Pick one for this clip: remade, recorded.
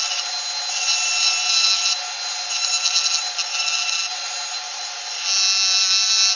recorded